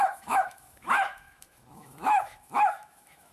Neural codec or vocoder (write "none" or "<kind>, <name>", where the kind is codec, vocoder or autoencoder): autoencoder, DAC-VAE